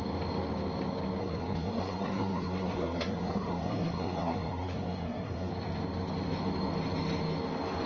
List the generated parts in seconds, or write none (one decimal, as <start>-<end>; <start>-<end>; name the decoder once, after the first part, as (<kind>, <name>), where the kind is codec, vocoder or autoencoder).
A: 1.2-5.5 (codec, SNAC)